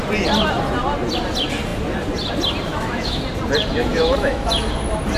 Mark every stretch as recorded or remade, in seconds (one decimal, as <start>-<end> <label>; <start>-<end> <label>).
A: 0.0-2.7 recorded; 2.7-3.2 remade; 3.2-3.9 recorded; 3.9-4.5 remade; 4.5-5.2 recorded